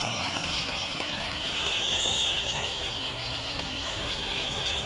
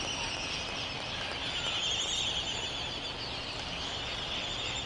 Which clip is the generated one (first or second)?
first